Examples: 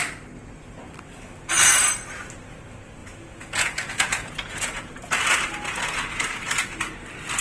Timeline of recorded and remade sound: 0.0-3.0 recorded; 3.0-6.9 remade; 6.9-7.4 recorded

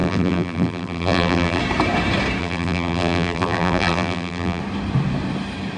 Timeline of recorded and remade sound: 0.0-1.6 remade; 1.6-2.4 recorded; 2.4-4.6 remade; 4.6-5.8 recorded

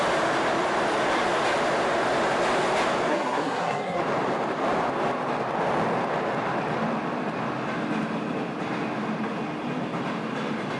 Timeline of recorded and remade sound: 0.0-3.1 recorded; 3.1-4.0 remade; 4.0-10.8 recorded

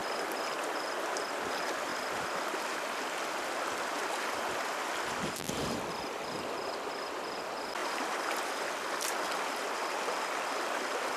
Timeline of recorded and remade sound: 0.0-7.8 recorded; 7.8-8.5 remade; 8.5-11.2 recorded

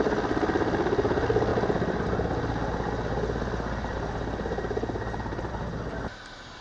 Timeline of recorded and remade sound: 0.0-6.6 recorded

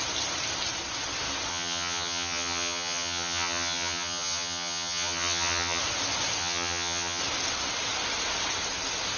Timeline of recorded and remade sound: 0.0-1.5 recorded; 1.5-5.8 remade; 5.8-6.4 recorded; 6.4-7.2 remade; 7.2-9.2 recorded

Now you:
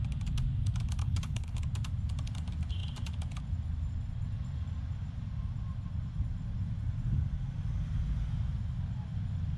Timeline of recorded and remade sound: 0.0-1.0 recorded; 1.0-1.6 remade; 1.6-9.6 recorded